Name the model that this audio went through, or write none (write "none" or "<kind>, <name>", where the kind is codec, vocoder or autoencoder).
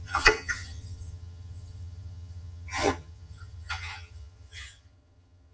vocoder, HiFi-GAN